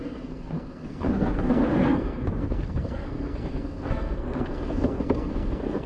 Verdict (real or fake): fake